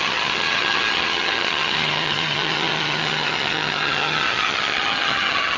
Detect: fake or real fake